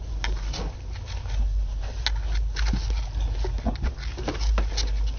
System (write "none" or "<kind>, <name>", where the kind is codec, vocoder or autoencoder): none